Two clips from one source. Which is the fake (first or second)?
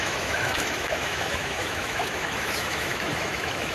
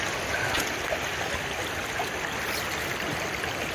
first